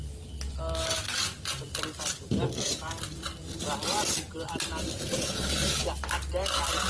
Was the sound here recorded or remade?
recorded